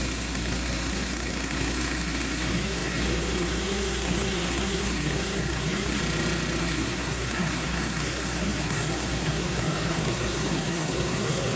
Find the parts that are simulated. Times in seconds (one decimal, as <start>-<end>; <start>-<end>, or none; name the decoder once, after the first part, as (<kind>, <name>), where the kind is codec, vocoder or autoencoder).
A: 0.0-6.0 (codec, SNAC); 6.6-11.6